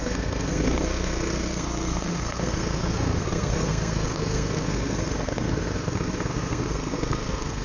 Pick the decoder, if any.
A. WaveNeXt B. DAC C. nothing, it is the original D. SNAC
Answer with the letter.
D